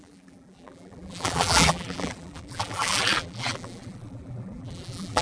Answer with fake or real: fake